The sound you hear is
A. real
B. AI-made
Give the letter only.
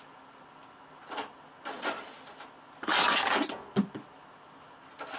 A